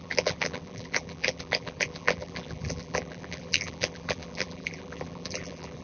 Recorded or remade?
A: remade